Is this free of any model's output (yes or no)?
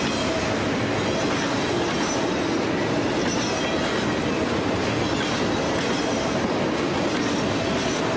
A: yes